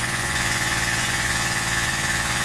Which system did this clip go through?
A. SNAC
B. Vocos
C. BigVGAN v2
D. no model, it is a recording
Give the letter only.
B